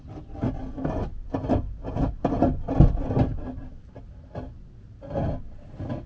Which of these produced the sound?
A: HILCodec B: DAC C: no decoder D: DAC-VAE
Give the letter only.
C